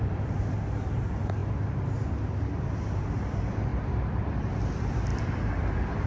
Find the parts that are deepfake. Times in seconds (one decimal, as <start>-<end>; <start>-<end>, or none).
0.0-1.4; 3.2-6.1